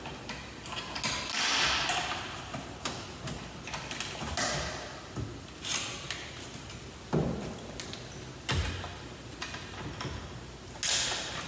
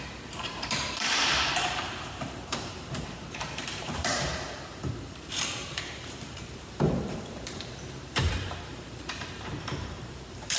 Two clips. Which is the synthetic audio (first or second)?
second